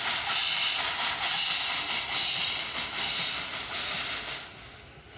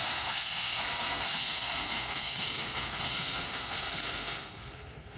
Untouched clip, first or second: first